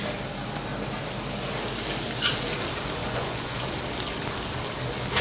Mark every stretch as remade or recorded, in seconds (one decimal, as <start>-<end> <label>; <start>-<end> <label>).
0.0-3.0 recorded; 3.0-3.7 remade; 3.7-5.2 recorded